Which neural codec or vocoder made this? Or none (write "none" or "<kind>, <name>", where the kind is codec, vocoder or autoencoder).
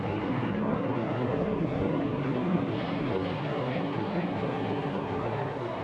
codec, SNAC